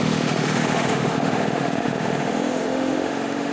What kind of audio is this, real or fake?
fake